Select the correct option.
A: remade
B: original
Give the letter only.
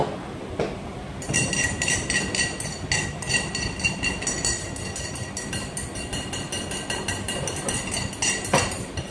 B